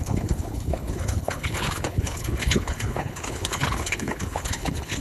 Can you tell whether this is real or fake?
fake